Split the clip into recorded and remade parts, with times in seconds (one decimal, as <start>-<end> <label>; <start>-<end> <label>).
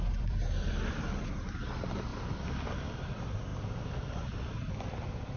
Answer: 0.0-2.1 remade; 2.1-2.6 recorded; 2.6-5.4 remade